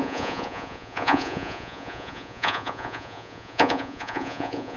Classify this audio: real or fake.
fake